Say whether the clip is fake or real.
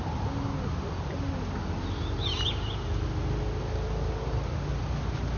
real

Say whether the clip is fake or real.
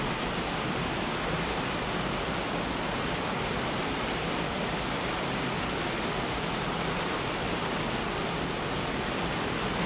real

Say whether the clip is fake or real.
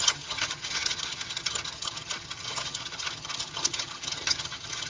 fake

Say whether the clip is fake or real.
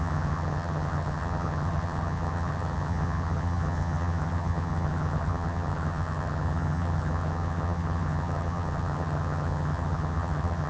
fake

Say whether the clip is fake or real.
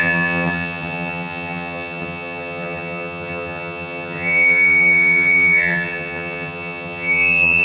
fake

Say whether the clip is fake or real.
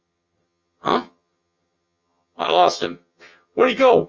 fake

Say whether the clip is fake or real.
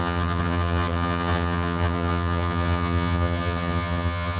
fake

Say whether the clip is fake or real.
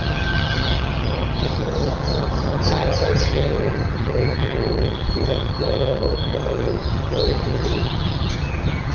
fake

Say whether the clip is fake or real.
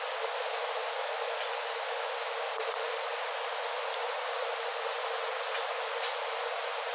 real